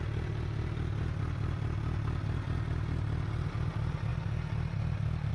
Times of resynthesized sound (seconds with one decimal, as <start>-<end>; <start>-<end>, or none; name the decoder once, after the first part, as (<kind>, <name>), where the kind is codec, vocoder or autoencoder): none